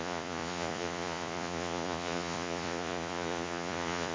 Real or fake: fake